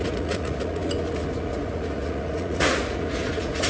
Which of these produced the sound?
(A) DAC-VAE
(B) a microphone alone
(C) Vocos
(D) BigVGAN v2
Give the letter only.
C